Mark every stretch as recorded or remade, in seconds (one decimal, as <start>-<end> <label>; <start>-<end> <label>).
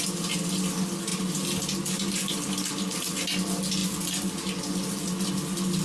0.0-5.8 recorded